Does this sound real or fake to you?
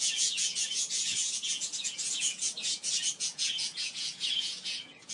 fake